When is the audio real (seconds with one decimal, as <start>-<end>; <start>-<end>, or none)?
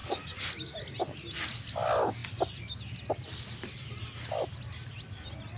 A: 0.5-5.6